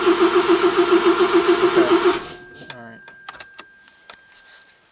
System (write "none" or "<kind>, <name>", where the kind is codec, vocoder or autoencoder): none